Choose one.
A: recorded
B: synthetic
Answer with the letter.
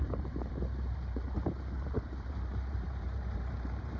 B